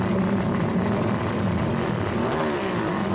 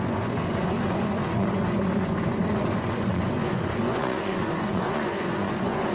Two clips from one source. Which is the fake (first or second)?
second